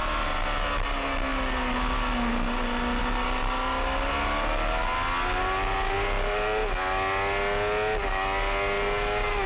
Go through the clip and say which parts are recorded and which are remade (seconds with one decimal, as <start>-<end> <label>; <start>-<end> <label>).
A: 0.0-9.5 recorded